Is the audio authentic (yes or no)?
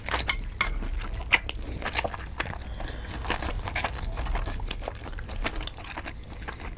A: yes